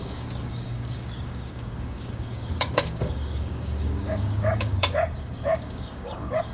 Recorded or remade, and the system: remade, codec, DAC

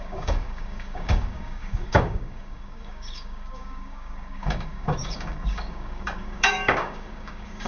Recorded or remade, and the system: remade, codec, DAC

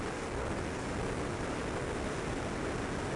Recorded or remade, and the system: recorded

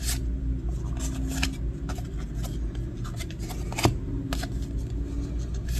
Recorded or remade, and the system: recorded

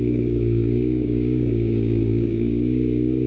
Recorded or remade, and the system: remade, codec, DAC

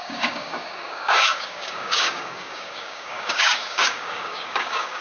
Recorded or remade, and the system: remade, codec, DAC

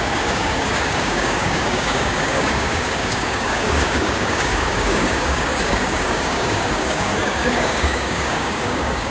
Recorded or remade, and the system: remade, codec, DAC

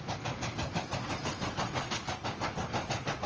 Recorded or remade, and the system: recorded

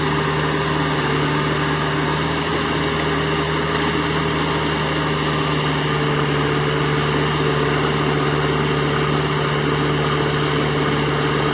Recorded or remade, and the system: recorded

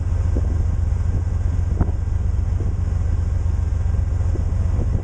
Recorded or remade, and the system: recorded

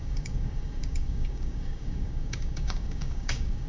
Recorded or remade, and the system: remade, codec, DAC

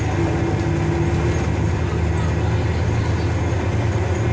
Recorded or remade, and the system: recorded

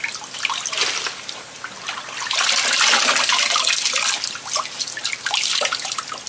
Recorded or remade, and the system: recorded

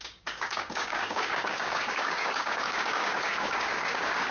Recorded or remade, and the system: remade, codec, DAC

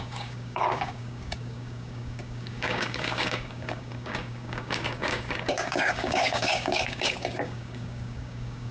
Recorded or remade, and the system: remade, codec, DAC